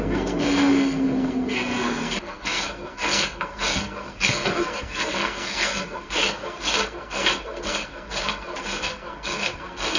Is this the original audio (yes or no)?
no